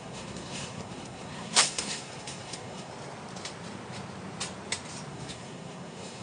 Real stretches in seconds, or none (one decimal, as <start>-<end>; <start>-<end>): 2.9-5.1